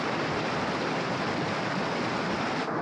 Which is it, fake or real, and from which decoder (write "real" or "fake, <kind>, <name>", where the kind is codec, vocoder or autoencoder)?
real